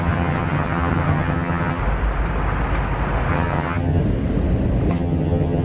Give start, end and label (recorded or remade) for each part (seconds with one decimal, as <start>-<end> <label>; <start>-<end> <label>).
0.0-1.8 remade; 1.8-3.3 recorded; 3.3-4.0 remade; 4.0-4.9 recorded; 4.9-5.6 remade